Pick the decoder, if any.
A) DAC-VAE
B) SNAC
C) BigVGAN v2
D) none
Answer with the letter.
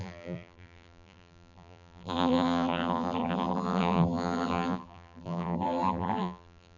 C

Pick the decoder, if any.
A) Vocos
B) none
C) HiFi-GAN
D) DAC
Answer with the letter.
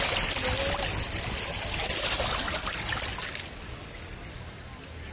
B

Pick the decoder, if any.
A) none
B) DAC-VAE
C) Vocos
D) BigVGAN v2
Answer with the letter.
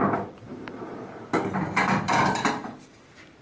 A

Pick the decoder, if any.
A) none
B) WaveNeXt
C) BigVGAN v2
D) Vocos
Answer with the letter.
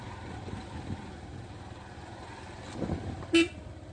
A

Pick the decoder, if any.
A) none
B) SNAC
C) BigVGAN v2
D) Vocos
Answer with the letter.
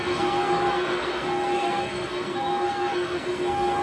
B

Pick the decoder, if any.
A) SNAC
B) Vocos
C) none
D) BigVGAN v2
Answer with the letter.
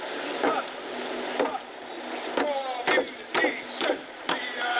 C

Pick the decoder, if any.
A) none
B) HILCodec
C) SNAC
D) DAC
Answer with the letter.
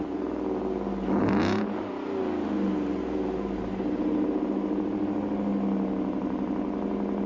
A